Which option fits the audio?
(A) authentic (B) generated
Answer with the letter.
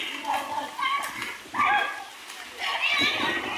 A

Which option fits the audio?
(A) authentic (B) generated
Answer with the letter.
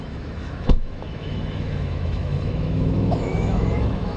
B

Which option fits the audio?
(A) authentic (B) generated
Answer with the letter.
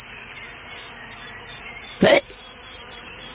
A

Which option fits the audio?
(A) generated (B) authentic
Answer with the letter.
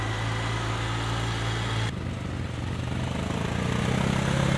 B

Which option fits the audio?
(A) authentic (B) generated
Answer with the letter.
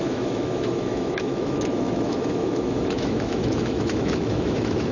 B